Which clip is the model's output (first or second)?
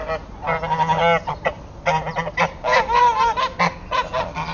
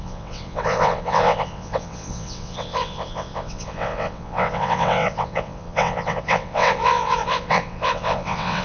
second